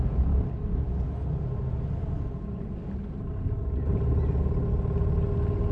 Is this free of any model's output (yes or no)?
yes